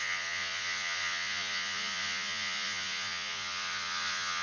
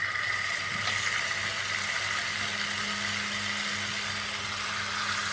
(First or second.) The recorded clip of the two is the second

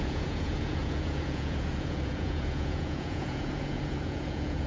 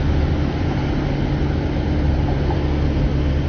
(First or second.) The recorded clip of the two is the second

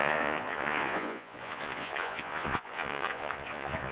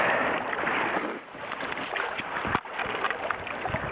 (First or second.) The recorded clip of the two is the second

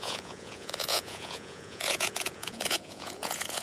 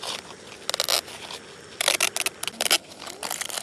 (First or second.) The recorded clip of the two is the second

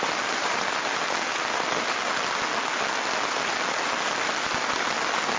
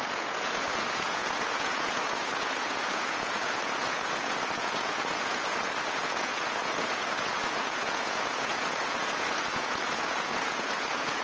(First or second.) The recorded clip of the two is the first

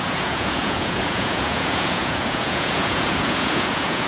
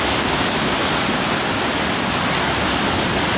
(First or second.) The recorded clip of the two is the second